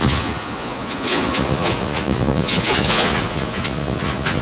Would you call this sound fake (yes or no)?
yes